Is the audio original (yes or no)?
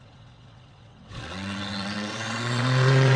no